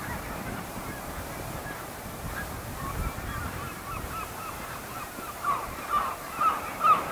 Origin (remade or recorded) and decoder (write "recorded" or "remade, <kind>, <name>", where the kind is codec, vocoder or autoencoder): remade, vocoder, BigVGAN v2